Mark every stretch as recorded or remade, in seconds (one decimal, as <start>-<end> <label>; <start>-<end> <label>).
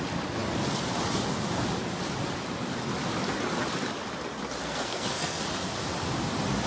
0.0-4.6 recorded; 4.6-5.4 remade; 5.4-6.7 recorded